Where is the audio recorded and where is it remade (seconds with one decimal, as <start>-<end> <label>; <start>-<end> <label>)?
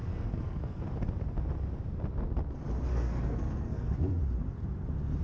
0.0-0.8 remade; 0.8-2.9 recorded; 2.9-4.2 remade; 4.2-5.2 recorded